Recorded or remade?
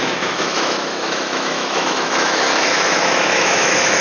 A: remade